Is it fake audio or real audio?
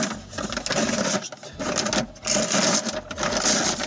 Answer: real